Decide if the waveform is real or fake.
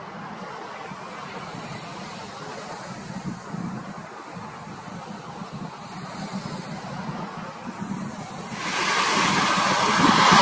real